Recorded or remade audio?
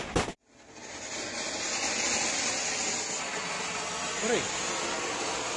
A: recorded